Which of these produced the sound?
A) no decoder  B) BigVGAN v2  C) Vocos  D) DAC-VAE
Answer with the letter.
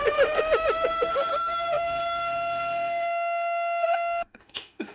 D